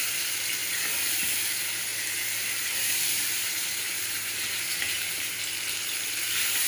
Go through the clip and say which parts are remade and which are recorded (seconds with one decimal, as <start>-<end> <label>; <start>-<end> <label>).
0.0-1.9 recorded; 1.9-5.4 remade; 5.4-6.7 recorded